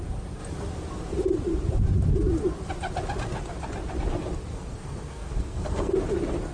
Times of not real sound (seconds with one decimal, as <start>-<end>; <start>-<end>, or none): 4.5-5.9